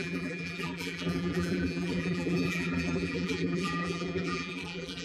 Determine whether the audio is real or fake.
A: fake